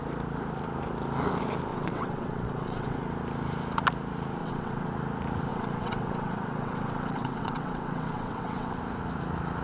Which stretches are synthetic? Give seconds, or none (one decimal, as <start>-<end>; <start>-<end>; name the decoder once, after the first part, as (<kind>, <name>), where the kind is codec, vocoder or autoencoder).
1.7-3.0 (vocoder, WaveNeXt); 4.4-4.9; 5.5-8.8